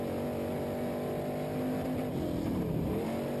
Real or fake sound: real